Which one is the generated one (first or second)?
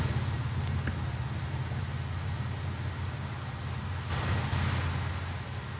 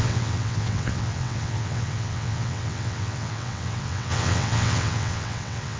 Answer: second